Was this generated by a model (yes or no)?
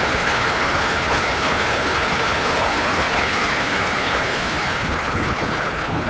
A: yes